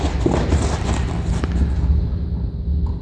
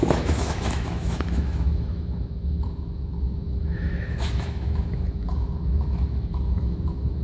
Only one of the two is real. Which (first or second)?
first